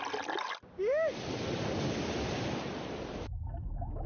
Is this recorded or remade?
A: recorded